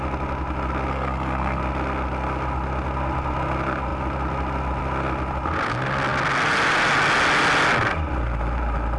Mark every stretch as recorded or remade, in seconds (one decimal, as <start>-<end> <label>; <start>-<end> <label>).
0.0-0.9 recorded; 0.9-1.6 remade; 1.6-9.0 recorded